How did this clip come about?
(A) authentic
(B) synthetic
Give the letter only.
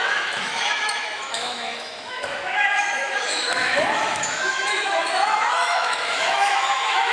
B